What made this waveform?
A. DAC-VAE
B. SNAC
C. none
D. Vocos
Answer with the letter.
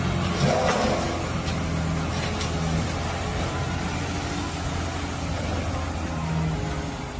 C